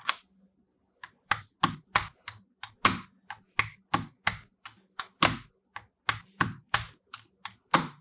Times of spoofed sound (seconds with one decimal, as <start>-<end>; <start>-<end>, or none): 6.2-6.9